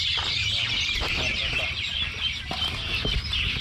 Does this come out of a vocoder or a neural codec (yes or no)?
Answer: no